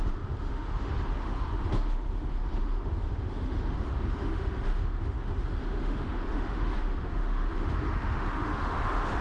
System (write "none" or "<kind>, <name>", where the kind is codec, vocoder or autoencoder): autoencoder, DAC-VAE